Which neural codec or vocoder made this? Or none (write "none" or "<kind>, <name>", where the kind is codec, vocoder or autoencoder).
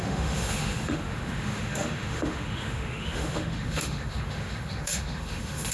autoencoder, DAC-VAE